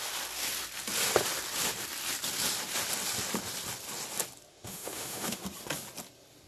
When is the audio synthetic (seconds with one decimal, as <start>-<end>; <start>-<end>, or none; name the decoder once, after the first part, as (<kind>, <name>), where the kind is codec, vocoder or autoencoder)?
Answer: 4.5-5.4 (autoencoder, DAC-VAE)